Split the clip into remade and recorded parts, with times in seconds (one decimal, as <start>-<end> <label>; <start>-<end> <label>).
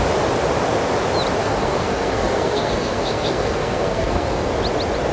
0.0-1.4 recorded; 1.4-4.5 remade; 4.5-5.1 recorded